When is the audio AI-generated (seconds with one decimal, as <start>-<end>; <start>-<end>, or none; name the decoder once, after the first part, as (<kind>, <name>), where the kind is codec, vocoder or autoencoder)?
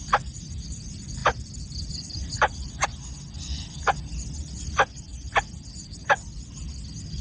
none